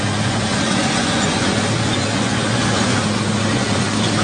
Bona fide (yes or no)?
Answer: no